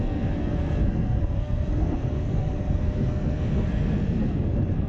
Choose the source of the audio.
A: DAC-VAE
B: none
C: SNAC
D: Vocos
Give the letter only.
C